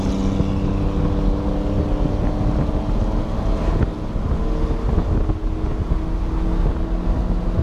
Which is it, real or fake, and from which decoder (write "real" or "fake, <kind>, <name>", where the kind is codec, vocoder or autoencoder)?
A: real